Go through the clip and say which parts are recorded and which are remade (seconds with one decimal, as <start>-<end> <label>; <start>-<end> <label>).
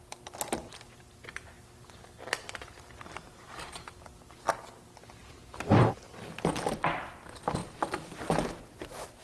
0.0-5.2 recorded; 5.2-6.1 remade; 6.1-7.6 recorded; 7.6-8.2 remade; 8.2-9.2 recorded